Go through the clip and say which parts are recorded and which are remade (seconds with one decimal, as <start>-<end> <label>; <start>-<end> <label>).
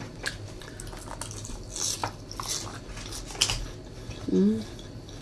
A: 0.0-5.2 recorded